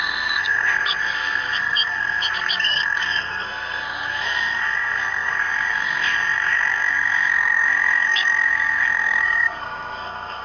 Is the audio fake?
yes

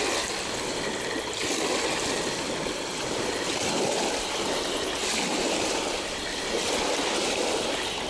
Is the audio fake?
no